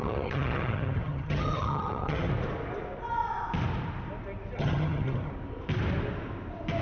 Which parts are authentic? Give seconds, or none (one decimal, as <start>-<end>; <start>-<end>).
2.3-4.6; 5.3-6.8